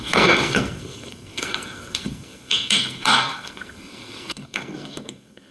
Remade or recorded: remade